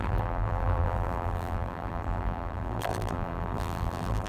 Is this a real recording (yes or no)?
no